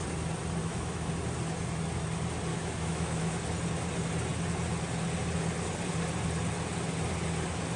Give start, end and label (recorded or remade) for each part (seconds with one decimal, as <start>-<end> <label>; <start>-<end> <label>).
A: 0.0-0.6 recorded; 0.6-1.1 remade; 1.1-2.5 recorded; 2.5-3.4 remade; 3.4-7.8 recorded